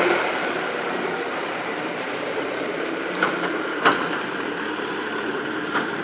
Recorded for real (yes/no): no